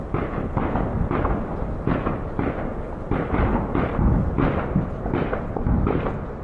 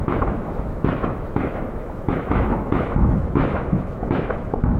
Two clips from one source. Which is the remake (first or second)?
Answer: second